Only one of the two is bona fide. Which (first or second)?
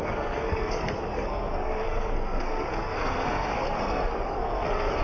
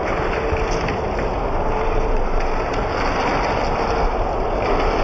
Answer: second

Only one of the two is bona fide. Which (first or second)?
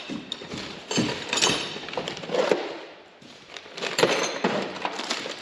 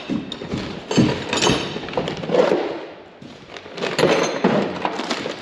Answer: second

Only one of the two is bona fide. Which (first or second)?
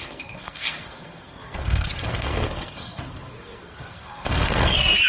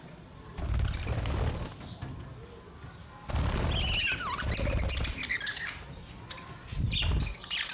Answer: second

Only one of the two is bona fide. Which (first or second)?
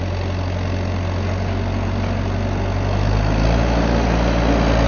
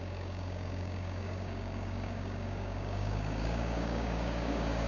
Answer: first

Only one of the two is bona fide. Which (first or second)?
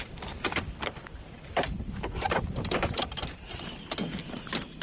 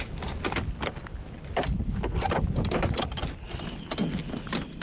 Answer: second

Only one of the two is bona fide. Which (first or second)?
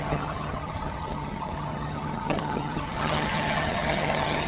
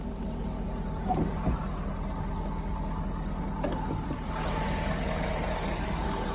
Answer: second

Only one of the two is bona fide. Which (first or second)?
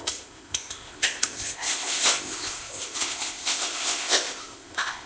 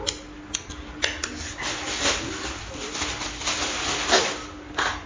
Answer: second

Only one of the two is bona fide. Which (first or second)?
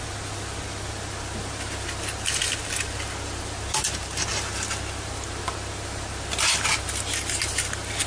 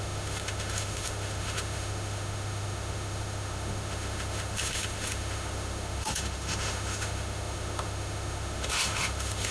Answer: first